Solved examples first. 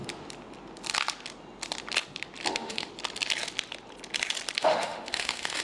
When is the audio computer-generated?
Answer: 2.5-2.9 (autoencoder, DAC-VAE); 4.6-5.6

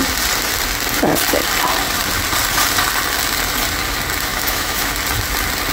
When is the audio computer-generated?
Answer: 4.3-4.9 (autoencoder, DAC-VAE)

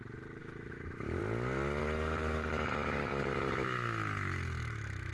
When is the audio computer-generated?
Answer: 0.4-1.2 (autoencoder, DAC-VAE); 1.8-5.1

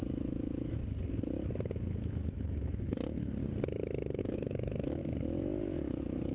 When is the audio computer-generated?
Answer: 0.0-0.8 (autoencoder, DAC-VAE); 1.9-3.4; 4.2-5.0; 5.6-6.3